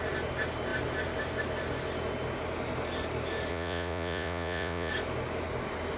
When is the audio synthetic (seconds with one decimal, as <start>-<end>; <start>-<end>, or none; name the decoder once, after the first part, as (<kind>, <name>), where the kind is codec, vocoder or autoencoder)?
3.5-4.9 (vocoder, Vocos)